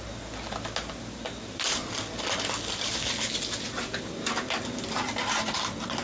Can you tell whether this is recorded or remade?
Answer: recorded